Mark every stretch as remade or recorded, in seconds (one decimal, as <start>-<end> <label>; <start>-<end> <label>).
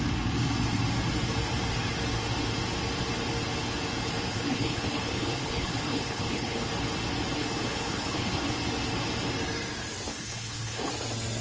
0.0-4.3 recorded; 4.3-6.7 remade; 6.7-7.4 recorded; 7.4-8.5 remade; 8.5-10.1 recorded; 10.1-10.9 remade; 10.9-11.4 recorded